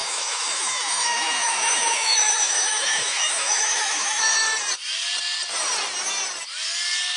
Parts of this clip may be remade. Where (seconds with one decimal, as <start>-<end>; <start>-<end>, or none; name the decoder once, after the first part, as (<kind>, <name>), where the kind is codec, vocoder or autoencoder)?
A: 0.0-4.2 (autoencoder, DAC-VAE)